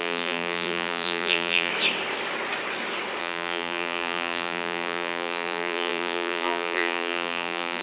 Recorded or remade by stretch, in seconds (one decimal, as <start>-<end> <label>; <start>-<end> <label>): 0.0-1.7 remade; 1.7-3.2 recorded; 3.2-7.8 remade